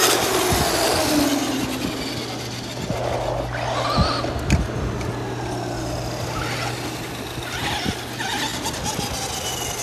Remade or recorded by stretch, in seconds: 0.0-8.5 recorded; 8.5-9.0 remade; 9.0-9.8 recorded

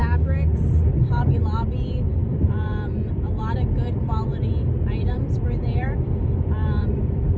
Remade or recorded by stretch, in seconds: 0.0-0.8 recorded; 0.8-4.3 remade; 4.3-5.0 recorded; 5.0-7.4 remade

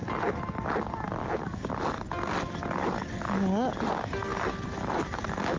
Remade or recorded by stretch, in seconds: 0.0-5.6 recorded